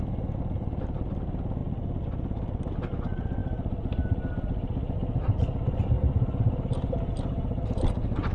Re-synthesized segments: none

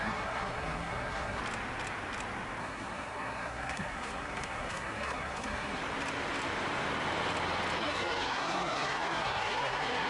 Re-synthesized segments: 0.0-1.4 (codec, SNAC); 2.6-5.8; 7.8-10.1

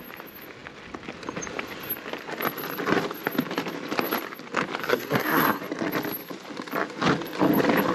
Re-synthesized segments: 4.8-5.6 (codec, SNAC)

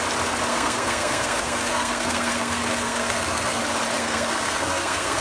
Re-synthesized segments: 0.5-3.6 (codec, SNAC); 4.0-5.2

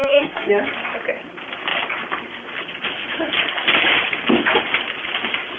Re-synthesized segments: 0.0-0.5 (codec, SNAC)

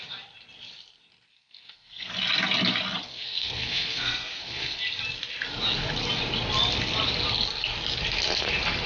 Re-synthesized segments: 1.3-2.1 (codec, SNAC); 3.1-4.8

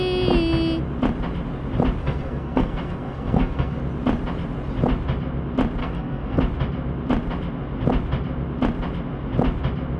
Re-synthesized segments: 2.0-3.8 (codec, SNAC); 5.8-6.4

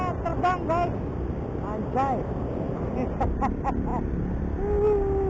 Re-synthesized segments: none